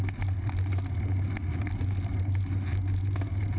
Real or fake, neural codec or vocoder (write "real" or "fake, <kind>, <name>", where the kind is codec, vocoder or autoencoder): real